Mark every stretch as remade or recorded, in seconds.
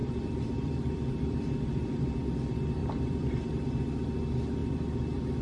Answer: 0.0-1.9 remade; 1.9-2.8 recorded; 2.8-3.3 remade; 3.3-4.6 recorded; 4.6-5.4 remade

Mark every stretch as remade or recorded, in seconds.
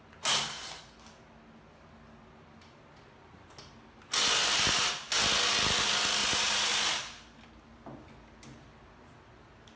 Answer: 0.0-4.4 recorded; 4.4-5.1 remade; 5.1-6.2 recorded; 6.2-7.5 remade; 7.5-9.8 recorded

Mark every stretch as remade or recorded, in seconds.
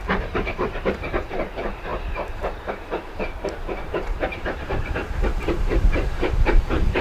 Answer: 0.0-5.0 remade; 5.0-5.5 recorded; 5.5-7.0 remade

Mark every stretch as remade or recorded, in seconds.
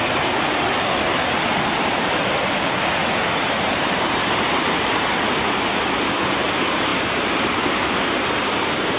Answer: 0.0-3.0 recorded; 3.0-5.2 remade; 5.2-9.0 recorded